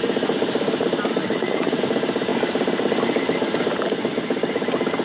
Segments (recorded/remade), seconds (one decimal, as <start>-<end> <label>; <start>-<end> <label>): 0.0-1.2 recorded; 1.2-1.8 remade; 1.8-5.0 recorded